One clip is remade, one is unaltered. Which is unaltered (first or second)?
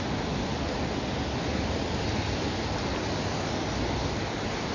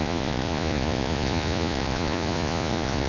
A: first